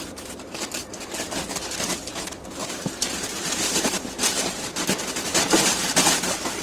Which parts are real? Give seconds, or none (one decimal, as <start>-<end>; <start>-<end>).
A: 0.0-2.6; 4.1-6.6